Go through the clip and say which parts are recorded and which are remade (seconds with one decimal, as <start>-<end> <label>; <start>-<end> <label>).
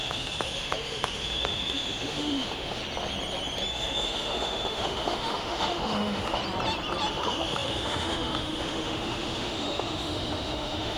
0.0-2.8 remade; 2.8-3.7 recorded; 3.7-6.4 remade; 6.4-7.1 recorded; 7.1-11.0 remade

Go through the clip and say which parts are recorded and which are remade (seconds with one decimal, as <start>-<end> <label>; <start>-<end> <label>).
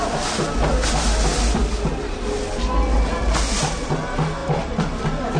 0.0-5.4 recorded